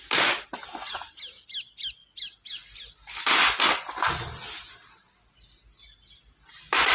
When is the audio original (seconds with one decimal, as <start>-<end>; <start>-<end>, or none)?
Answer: 0.0-6.9